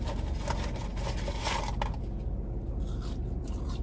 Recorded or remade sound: recorded